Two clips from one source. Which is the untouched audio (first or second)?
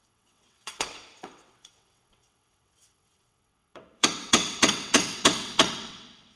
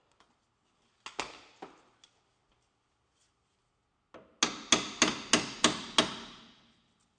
second